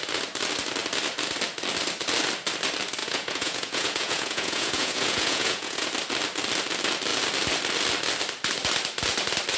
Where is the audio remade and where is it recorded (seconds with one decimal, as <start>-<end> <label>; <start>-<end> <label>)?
0.0-3.0 recorded; 3.0-5.9 remade; 5.9-9.6 recorded